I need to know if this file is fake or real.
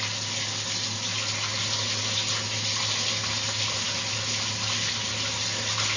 real